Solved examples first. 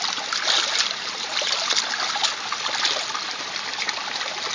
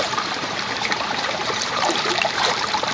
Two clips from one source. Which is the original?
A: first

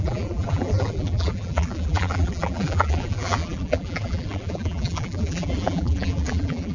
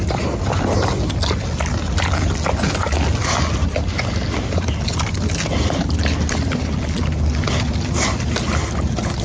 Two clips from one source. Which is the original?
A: second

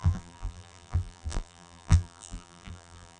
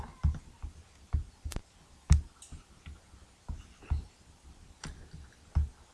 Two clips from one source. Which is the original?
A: second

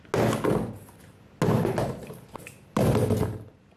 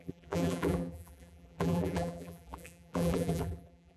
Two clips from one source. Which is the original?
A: first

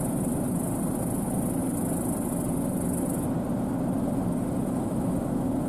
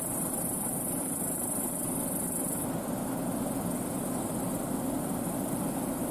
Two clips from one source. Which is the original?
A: first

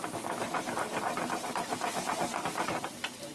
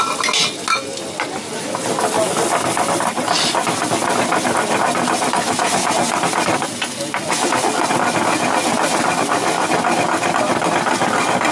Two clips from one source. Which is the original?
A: second